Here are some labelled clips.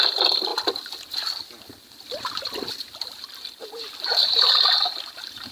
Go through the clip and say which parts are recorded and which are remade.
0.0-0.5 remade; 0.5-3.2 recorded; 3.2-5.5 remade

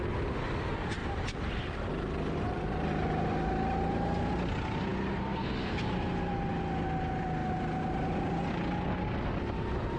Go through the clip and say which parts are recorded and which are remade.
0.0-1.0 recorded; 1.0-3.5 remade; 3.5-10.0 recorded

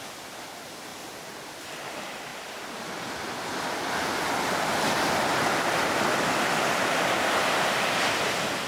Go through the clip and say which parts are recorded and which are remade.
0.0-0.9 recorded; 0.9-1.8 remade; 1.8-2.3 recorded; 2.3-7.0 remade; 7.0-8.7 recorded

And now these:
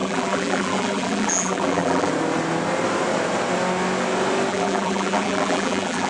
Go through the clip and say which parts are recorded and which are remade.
0.0-2.1 remade; 2.1-4.5 recorded; 4.5-6.1 remade